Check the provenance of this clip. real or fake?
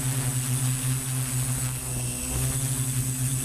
real